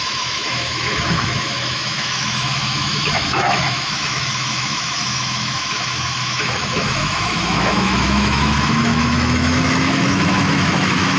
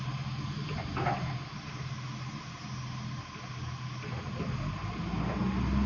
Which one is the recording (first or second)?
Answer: second